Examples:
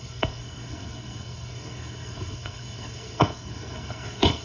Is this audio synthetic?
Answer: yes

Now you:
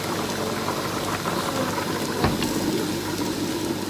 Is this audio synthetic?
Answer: no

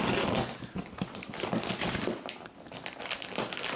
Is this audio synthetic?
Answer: no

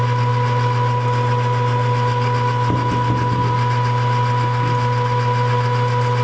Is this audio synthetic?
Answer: no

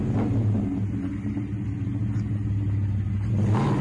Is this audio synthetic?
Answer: no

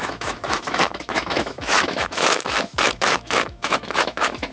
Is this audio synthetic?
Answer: yes